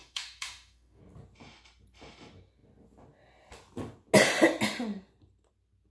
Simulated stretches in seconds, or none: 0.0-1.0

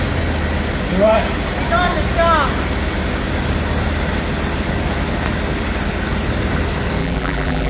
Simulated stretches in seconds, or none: 7.0-7.7

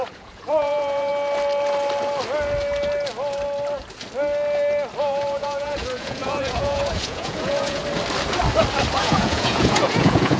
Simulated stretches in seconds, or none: 0.0-1.1; 5.0-7.8; 9.0-10.4

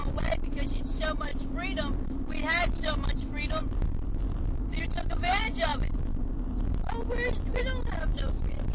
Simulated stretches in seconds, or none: none

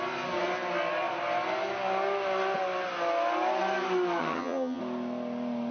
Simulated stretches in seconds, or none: 4.2-4.8